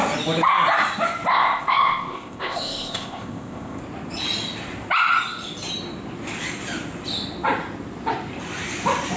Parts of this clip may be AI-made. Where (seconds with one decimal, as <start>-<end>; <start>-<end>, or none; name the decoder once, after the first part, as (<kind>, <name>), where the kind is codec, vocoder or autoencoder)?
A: 1.3-3.8 (codec, ZipCodec)